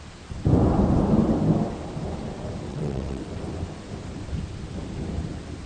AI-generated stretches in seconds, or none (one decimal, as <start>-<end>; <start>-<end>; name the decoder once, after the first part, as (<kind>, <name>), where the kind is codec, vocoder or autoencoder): 2.7-3.2 (vocoder, WaveNeXt)